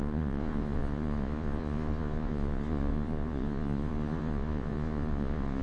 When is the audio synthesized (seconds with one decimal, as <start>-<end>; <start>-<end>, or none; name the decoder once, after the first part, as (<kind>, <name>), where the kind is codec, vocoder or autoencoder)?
0.0-5.6 (vocoder, Vocos)